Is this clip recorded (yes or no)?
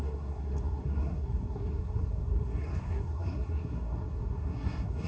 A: no